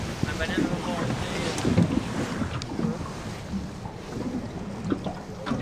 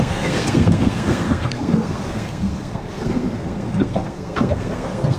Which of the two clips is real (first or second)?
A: first